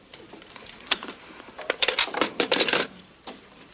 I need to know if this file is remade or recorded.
remade